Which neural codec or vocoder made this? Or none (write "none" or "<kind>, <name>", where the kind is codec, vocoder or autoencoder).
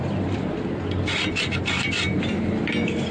vocoder, BigVGAN v2